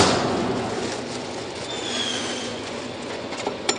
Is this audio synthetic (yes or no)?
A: yes